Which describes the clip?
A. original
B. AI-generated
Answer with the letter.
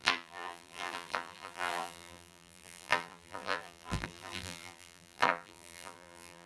B